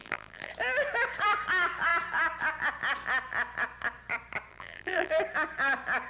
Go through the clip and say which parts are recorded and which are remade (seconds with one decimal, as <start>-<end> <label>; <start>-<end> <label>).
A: 0.0-0.5 remade; 0.5-4.5 recorded; 4.5-5.1 remade; 5.1-6.1 recorded